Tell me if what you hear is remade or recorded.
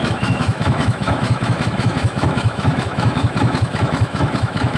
remade